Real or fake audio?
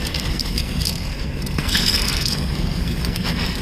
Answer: fake